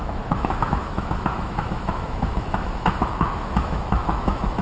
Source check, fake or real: fake